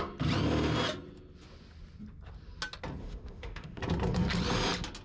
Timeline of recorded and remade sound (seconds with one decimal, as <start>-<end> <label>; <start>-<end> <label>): 0.0-3.0 recorded; 3.0-3.8 remade; 3.8-5.0 recorded